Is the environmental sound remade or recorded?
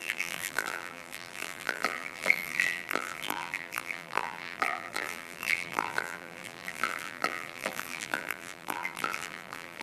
remade